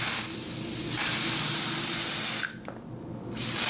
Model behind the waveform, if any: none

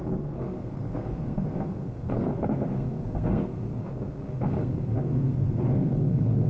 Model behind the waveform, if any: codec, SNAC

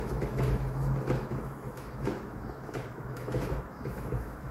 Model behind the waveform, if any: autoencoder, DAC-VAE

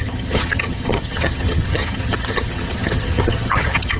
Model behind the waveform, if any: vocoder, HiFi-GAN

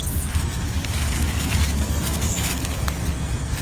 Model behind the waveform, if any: codec, SNAC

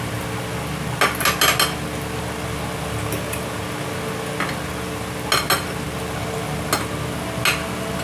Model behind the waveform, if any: none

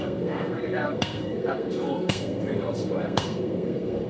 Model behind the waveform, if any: codec, SNAC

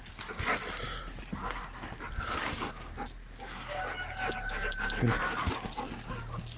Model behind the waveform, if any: none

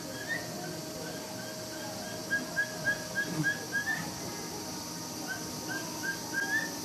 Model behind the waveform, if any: none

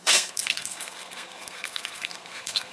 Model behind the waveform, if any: codec, SNAC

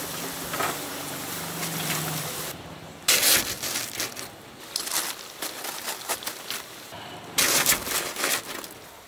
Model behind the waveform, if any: none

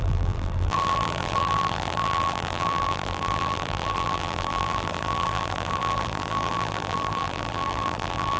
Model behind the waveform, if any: vocoder, BigVGAN v2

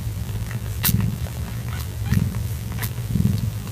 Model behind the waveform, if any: vocoder, BigVGAN v2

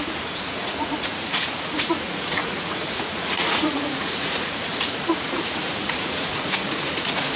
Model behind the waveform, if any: vocoder, Vocos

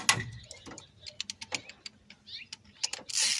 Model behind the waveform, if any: none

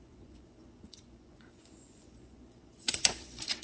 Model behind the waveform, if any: vocoder, Vocos